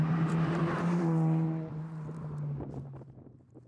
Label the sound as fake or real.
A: fake